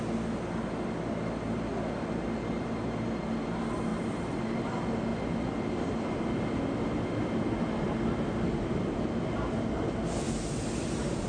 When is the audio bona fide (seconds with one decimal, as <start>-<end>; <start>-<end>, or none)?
0.0-11.3